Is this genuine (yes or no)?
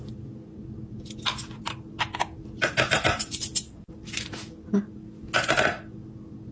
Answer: yes